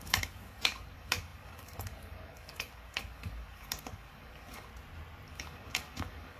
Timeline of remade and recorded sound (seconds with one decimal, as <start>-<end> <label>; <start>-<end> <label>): 0.0-4.7 remade; 4.7-5.3 recorded; 5.3-6.4 remade